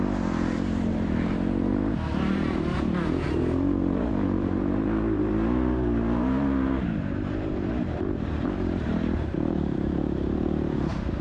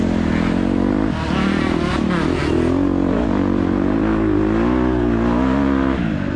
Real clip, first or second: second